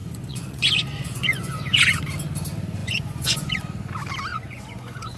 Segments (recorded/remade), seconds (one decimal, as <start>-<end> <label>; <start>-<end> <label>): 0.0-2.0 remade; 2.0-2.8 recorded; 2.8-3.6 remade; 3.6-4.3 recorded; 4.3-5.2 remade